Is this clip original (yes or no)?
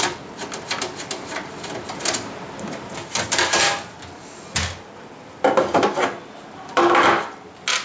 yes